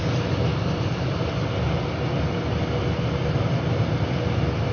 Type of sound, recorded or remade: recorded